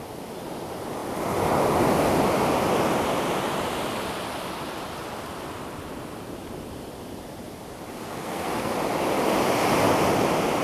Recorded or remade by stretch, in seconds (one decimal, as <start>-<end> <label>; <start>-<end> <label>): 0.0-7.9 recorded; 7.9-8.7 remade; 8.7-10.6 recorded

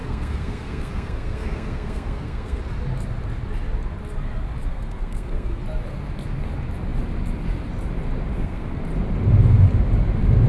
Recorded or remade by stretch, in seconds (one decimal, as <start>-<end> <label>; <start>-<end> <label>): 0.0-2.6 remade; 2.6-4.7 recorded; 4.7-5.6 remade; 5.6-8.3 recorded; 8.3-8.8 remade; 8.8-10.5 recorded

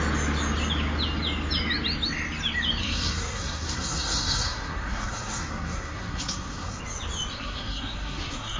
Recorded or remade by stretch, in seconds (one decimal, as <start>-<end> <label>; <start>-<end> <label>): 0.0-2.8 recorded; 2.8-6.8 remade; 6.8-7.3 recorded; 7.3-8.6 remade

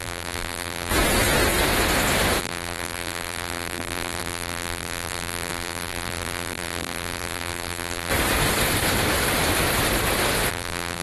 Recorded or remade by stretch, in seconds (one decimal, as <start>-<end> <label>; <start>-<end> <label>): 0.0-0.9 remade; 0.9-2.4 recorded; 2.4-8.1 remade; 8.1-10.5 recorded; 10.5-11.0 remade

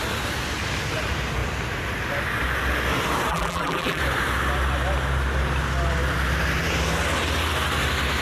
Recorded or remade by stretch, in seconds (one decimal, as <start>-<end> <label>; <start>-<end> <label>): 0.0-3.3 recorded; 3.3-4.0 remade; 4.0-8.2 recorded

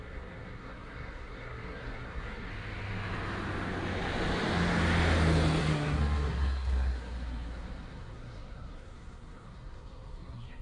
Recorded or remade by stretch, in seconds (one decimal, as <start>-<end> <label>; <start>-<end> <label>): 0.0-2.5 remade; 2.5-5.6 recorded; 5.6-10.6 remade